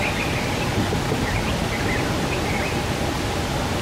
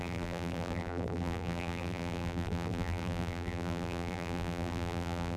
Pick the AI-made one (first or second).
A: second